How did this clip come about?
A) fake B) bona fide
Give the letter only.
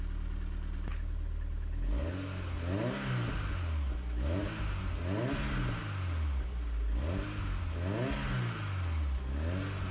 B